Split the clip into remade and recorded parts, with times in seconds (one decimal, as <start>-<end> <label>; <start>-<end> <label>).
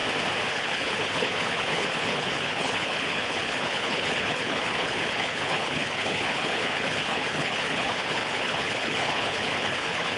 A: 0.0-0.5 recorded; 0.5-10.2 remade